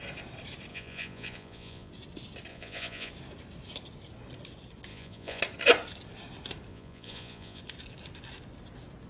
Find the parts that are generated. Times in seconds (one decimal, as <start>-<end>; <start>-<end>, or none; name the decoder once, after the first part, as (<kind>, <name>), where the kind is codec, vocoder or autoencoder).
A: 0.7-1.9 (vocoder, Vocos); 2.5-3.1; 4.9-5.4; 6.7-7.6

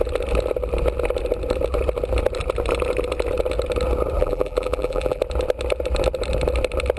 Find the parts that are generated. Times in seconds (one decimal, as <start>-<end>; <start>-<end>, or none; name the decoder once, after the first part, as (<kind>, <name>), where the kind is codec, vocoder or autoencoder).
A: 4.2-5.2 (vocoder, BigVGAN v2)

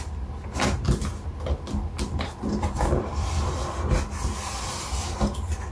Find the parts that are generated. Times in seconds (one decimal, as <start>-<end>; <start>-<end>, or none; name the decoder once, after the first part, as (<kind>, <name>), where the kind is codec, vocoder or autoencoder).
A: 0.0-5.7 (vocoder, BigVGAN v2)